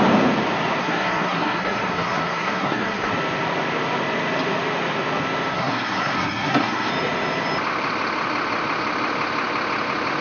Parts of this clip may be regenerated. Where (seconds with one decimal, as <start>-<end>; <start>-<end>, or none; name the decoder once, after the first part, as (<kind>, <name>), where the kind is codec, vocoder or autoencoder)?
0.8-3.1 (codec, SNAC); 5.5-6.9